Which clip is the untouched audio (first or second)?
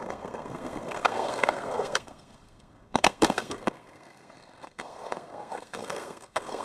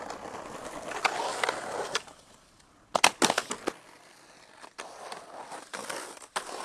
second